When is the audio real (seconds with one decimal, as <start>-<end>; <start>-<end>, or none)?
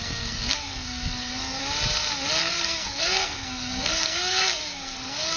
1.6-2.4